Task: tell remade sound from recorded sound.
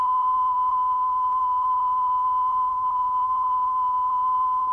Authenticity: remade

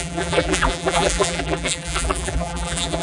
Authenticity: remade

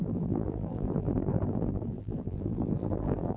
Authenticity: remade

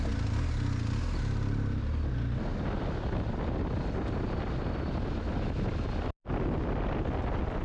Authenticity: recorded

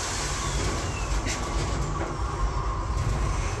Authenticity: remade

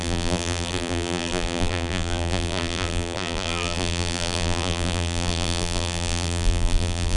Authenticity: remade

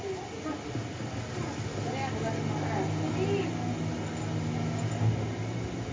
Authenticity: recorded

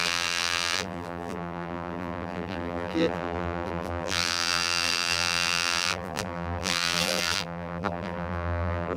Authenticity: remade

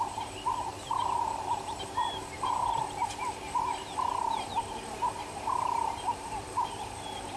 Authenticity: remade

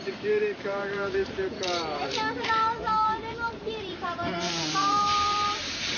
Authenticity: remade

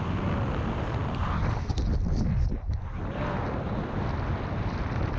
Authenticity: recorded